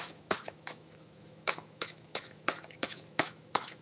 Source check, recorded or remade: remade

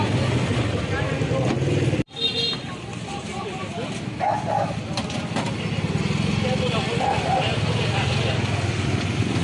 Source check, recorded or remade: recorded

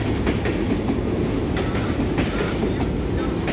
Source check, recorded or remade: recorded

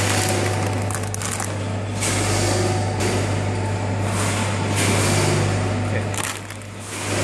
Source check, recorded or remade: recorded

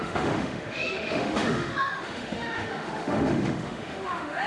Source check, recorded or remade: remade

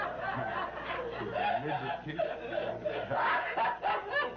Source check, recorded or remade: recorded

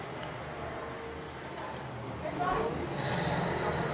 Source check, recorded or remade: recorded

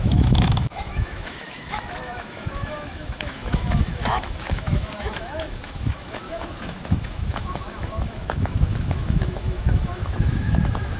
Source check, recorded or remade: remade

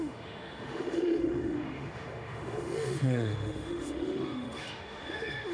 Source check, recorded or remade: remade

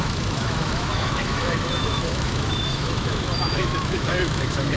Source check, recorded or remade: remade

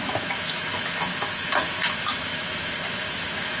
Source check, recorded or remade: remade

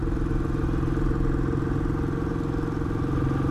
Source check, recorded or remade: recorded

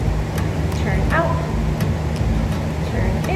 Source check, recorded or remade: recorded